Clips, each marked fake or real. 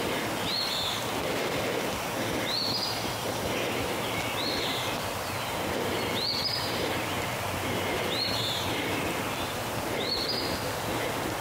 real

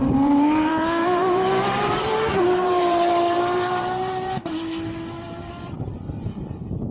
fake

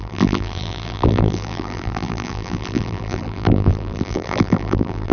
fake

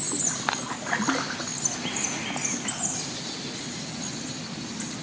real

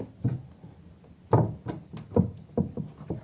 real